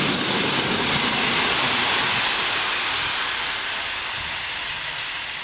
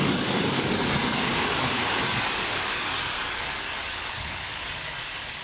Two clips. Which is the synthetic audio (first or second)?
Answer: second